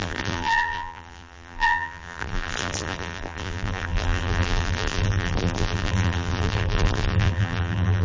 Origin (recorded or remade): remade